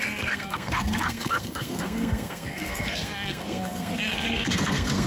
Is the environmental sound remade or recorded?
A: remade